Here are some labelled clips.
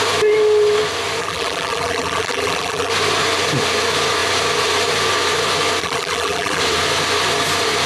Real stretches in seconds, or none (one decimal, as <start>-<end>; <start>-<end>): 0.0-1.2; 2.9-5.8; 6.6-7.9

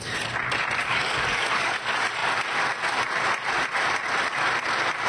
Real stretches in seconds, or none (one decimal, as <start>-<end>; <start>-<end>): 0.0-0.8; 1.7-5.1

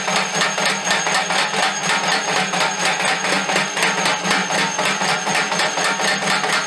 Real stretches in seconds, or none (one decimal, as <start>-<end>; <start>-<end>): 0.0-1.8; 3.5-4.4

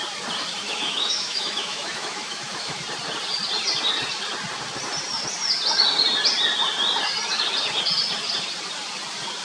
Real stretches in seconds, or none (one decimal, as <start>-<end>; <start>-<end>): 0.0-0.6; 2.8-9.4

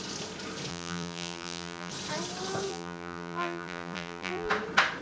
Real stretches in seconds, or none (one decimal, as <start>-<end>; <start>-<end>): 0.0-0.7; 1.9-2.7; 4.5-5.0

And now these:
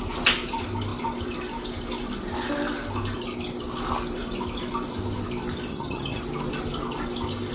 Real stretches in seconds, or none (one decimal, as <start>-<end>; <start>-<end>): 0.0-5.7; 6.2-7.5